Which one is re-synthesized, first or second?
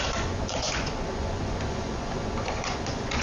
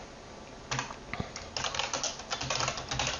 first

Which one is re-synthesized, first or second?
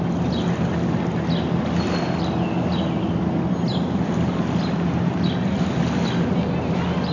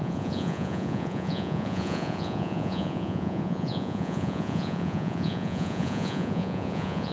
second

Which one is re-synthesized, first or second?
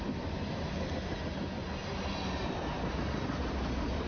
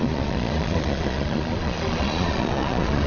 second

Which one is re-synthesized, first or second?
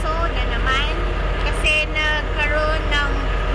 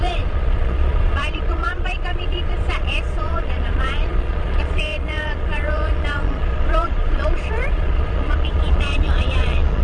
second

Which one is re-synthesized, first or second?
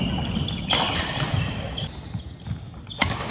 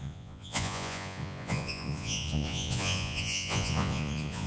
second